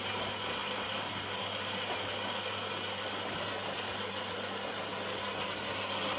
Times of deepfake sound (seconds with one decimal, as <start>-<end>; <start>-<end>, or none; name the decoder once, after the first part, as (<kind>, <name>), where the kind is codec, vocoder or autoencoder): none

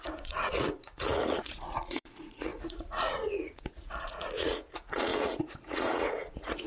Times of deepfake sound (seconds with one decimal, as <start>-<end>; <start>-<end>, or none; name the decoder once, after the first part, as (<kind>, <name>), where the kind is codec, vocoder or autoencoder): 0.0-6.7 (vocoder, Vocos)

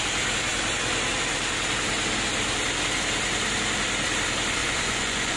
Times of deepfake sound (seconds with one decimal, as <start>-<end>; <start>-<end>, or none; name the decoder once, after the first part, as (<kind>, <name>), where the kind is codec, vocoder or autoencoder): 4.6-5.4 (vocoder, Vocos)

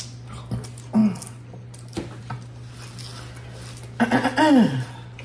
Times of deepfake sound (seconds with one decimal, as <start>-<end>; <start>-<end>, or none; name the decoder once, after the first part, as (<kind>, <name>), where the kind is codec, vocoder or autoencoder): none

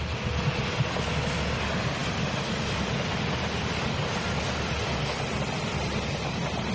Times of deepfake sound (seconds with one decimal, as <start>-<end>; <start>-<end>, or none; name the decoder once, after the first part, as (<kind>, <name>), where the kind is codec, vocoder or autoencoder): none

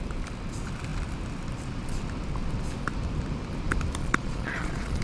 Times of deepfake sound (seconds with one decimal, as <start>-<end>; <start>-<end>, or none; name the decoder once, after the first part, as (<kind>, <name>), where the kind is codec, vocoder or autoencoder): 4.0-5.0 (vocoder, Vocos)

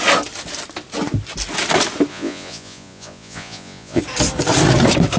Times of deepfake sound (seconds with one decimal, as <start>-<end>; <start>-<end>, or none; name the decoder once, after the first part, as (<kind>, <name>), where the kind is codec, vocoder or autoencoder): 2.1-4.0 (vocoder, Vocos)

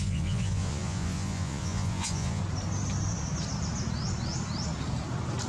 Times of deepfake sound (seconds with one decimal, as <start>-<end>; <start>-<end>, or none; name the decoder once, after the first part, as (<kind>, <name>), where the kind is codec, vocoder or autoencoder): 0.0-2.4 (vocoder, Vocos)